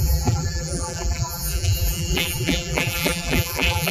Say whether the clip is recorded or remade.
remade